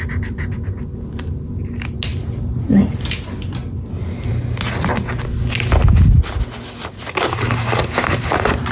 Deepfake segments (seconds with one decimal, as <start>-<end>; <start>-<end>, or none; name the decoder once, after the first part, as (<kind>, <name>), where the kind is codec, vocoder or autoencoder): none